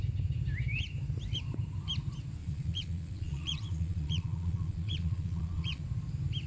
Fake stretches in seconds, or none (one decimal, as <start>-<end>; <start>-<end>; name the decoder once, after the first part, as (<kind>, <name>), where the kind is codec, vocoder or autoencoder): 2.4-5.8 (vocoder, Vocos)